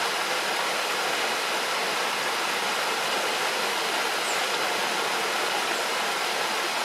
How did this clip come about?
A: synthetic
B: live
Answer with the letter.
B